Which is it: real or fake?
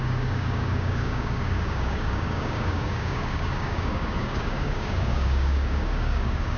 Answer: fake